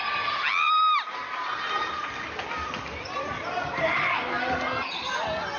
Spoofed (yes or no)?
no